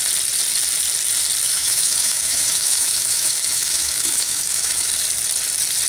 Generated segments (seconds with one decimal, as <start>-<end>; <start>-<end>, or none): 1.5-4.9